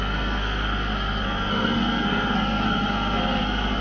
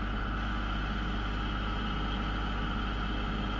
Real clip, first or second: second